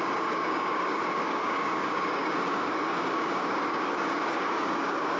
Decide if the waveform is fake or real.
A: fake